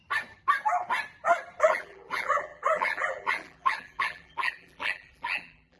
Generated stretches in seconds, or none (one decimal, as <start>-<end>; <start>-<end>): 1.6-5.8